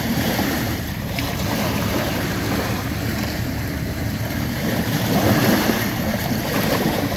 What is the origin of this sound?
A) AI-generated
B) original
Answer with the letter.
A